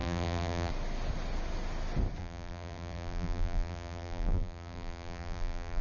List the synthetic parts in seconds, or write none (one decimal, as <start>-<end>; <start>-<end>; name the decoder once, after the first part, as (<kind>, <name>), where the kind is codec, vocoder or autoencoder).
0.0-0.7 (vocoder, BigVGAN v2); 2.2-5.8